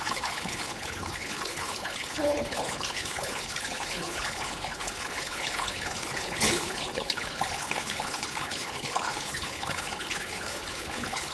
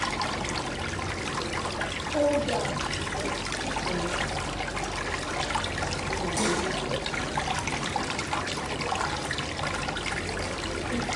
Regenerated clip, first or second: first